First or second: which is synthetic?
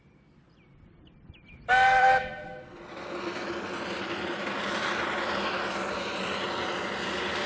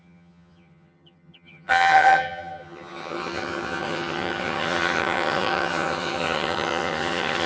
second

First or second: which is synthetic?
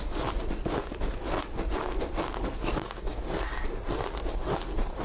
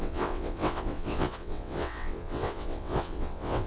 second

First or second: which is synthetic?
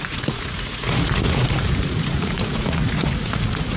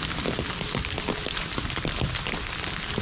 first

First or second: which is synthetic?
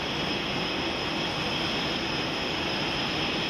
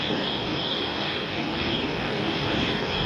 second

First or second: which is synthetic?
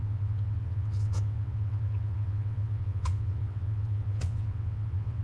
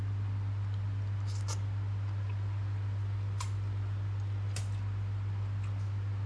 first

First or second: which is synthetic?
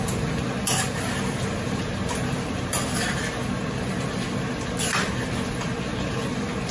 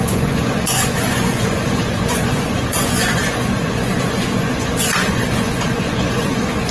second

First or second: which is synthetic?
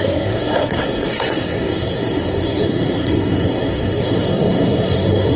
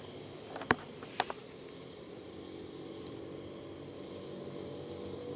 first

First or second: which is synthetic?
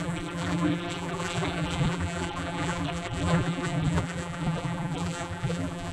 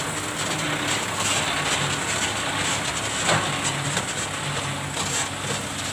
first